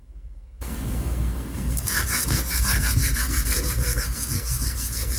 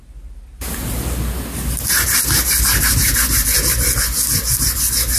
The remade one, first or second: first